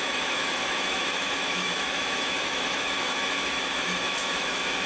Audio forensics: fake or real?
fake